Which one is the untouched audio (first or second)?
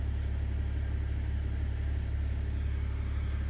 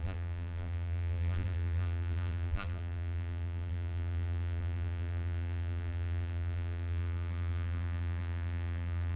first